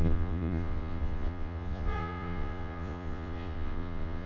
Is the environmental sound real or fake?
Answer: fake